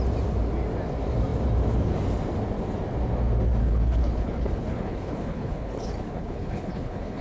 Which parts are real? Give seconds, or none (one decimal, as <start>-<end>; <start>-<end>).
0.0-3.6